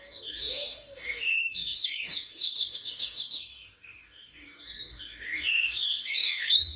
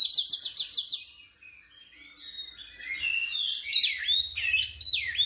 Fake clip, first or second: first